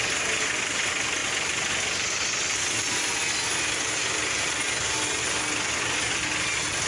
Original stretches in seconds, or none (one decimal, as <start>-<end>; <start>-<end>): 0.0-6.9